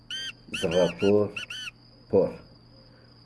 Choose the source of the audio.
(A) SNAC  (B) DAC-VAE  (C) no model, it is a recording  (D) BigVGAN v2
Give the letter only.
C